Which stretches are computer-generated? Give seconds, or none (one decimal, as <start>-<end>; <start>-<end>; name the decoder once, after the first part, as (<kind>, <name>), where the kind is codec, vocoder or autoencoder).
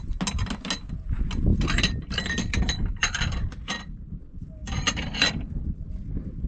3.0-3.5 (vocoder, BigVGAN v2); 4.6-5.3